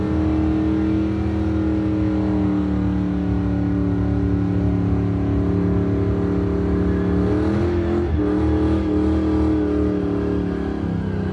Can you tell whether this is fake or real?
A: real